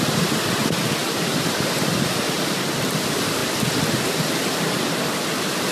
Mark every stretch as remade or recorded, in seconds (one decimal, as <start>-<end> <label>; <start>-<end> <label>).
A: 0.0-1.0 recorded; 1.0-2.1 remade; 2.1-5.7 recorded